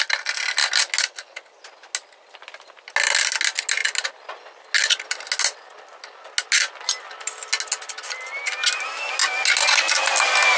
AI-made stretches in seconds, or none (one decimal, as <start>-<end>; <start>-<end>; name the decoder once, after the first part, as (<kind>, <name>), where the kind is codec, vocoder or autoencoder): none